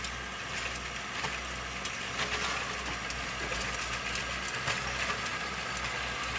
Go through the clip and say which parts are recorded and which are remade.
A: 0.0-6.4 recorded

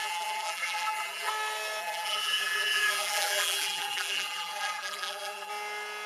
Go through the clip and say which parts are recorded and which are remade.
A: 0.0-1.3 remade; 1.3-1.8 recorded; 1.8-5.5 remade; 5.5-6.1 recorded

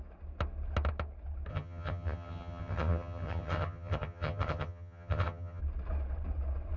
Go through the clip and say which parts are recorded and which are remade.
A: 0.0-1.5 recorded; 1.5-5.6 remade; 5.6-6.8 recorded

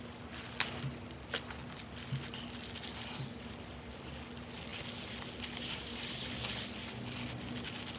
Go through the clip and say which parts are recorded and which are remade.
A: 0.0-8.0 recorded